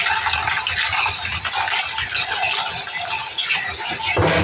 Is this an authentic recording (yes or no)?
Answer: yes